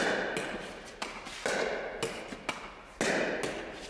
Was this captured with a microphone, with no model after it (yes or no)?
yes